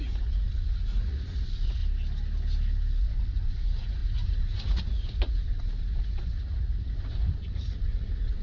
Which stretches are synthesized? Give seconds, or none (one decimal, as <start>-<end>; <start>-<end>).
0.0-1.8; 3.0-8.4